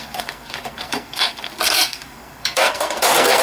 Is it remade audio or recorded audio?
remade